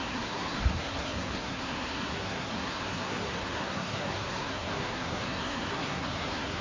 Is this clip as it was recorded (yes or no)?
no